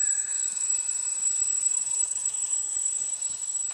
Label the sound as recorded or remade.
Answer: remade